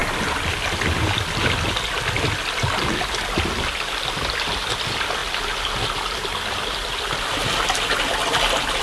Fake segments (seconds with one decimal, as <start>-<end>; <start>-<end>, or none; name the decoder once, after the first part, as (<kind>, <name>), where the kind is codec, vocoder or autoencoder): none